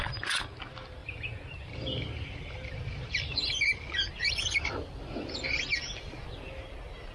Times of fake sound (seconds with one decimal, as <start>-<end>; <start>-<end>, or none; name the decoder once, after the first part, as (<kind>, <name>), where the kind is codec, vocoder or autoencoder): 1.0-3.1 (vocoder, BigVGAN v2)